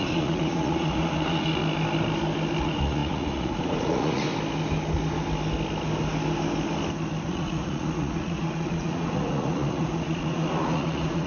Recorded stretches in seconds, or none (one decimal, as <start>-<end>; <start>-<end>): 1.6-2.6; 4.3-7.3